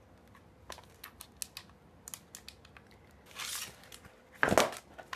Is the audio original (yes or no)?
yes